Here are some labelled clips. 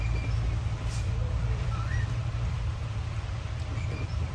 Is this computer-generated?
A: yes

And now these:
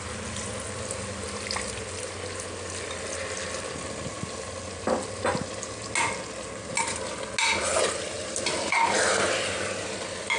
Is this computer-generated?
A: no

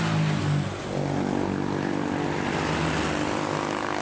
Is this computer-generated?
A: no